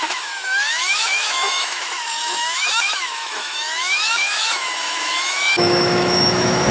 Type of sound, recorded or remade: remade